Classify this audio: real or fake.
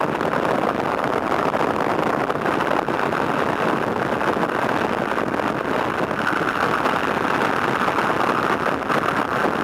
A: real